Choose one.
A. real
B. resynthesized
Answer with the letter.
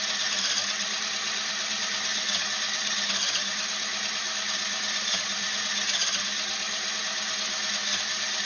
A